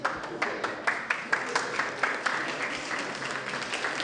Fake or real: real